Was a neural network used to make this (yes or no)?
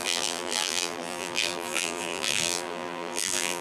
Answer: yes